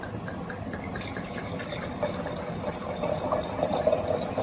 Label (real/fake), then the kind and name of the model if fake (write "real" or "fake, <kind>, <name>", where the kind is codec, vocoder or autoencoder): real